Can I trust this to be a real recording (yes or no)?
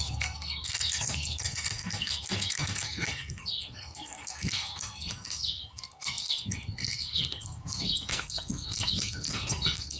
no